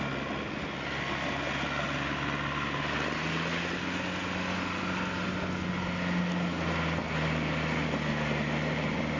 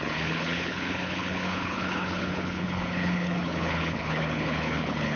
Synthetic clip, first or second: second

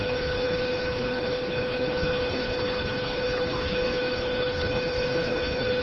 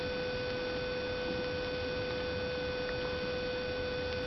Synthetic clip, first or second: first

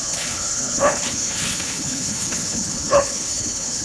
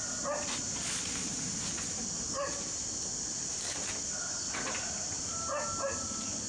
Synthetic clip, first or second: first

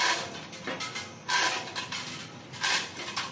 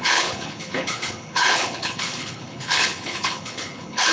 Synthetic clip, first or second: second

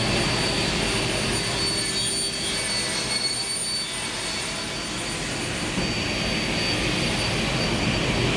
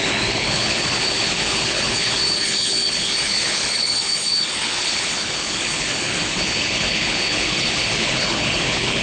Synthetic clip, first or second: second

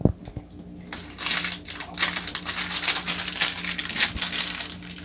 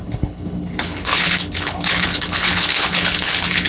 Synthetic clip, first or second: second